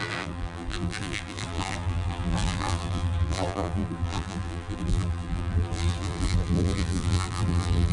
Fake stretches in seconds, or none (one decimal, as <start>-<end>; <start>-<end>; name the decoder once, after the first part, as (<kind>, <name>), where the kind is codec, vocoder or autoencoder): 0.0-7.9 (vocoder, BigVGAN v2)